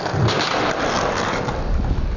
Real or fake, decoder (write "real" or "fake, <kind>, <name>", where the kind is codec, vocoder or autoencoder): real